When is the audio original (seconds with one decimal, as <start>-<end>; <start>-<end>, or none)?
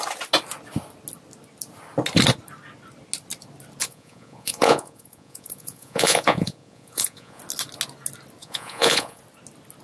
0.0-3.8; 7.4-8.4; 9.2-9.8